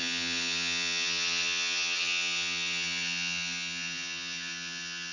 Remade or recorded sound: remade